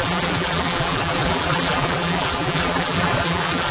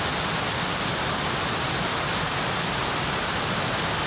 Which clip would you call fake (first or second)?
first